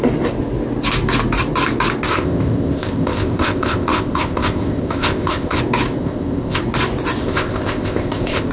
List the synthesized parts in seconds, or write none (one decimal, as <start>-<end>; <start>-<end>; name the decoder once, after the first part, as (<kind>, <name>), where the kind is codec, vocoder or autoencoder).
2.1-5.6 (codec, ZipCodec); 6.0-6.6; 7.2-8.5